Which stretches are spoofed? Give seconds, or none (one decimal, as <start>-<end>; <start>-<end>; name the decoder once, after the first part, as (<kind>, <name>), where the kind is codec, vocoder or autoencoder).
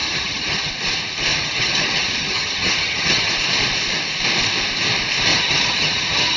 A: 0.0-0.7 (vocoder, HiFi-GAN); 1.3-3.3; 5.3-6.4